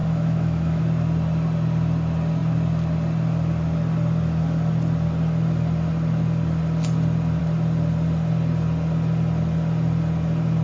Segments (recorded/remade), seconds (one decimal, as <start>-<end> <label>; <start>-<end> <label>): 0.0-0.8 remade; 0.8-10.6 recorded